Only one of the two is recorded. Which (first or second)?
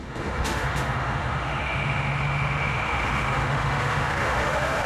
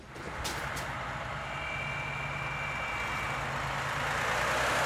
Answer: second